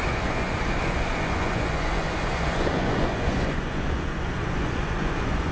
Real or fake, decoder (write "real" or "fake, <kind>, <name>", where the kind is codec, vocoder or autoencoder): fake, vocoder, Vocos